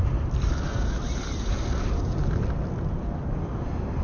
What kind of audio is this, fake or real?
real